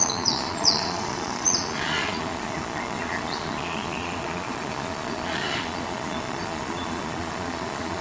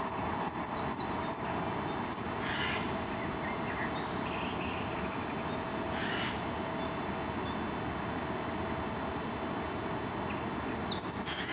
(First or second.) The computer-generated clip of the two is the first